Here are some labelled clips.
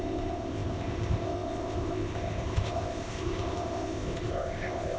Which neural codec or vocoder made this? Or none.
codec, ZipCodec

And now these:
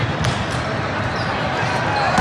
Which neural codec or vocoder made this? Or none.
none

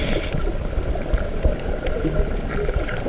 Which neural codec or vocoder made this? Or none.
vocoder, BigVGAN v2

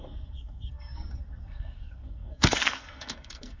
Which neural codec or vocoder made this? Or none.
codec, SNAC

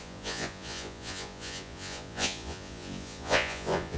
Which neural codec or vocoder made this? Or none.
vocoder, Vocos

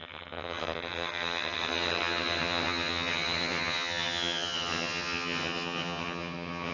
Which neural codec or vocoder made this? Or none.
vocoder, HiFi-GAN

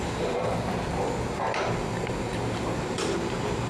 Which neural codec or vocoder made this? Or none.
vocoder, BigVGAN v2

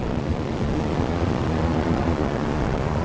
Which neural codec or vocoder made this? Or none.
vocoder, Vocos